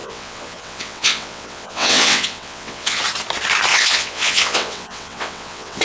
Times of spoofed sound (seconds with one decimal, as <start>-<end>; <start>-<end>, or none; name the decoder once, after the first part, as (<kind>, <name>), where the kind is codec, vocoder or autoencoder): 0.0-3.0 (vocoder, WaveNeXt); 3.7-5.8